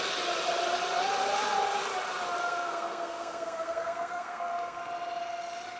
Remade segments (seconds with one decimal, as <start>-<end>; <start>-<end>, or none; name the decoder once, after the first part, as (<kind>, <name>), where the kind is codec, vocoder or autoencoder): 2.4-4.8 (codec, SNAC)

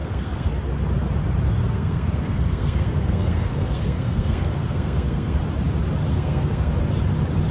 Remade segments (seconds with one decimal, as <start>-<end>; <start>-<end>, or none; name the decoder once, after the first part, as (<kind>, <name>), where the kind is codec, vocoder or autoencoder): 0.0-0.5 (codec, SNAC); 1.6-5.4; 6.1-6.7

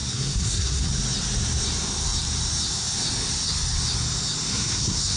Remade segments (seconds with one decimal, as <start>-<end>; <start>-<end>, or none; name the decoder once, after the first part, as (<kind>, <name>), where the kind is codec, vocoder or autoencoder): 0.0-0.9 (codec, SNAC); 4.5-5.2

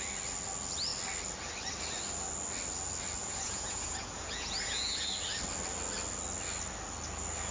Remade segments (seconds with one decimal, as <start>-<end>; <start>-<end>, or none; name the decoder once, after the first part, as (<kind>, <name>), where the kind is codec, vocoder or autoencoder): 3.2-5.1 (vocoder, Vocos)

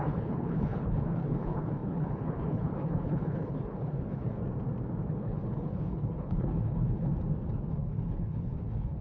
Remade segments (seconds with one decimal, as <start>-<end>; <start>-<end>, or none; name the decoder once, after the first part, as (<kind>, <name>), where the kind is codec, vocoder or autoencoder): 0.0-4.4 (codec, HILCodec); 5.1-7.1; 7.7-9.0

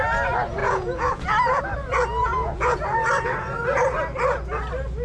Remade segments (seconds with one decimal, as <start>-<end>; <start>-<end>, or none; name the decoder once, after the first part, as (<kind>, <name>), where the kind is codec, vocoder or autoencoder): 0.6-1.6 (vocoder, Vocos); 2.2-2.8

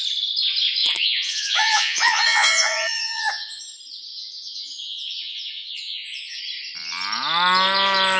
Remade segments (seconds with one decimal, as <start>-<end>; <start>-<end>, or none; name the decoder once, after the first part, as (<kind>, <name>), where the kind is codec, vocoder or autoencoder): 0.8-3.6 (vocoder, Vocos); 4.1-6.4

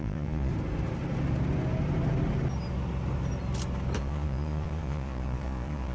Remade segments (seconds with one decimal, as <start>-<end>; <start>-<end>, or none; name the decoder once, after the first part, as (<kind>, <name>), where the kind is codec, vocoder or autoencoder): 0.0-0.5 (vocoder, Vocos); 4.0-5.9